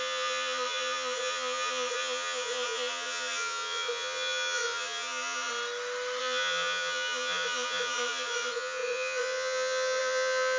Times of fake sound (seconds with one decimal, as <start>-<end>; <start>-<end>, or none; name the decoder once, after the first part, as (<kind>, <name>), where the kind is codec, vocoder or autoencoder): 0.0-5.5 (vocoder, Vocos); 6.2-10.6